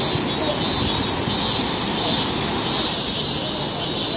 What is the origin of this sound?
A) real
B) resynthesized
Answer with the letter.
A